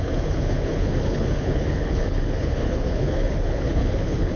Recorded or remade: remade